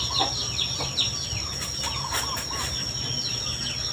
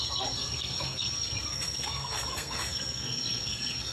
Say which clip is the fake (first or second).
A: second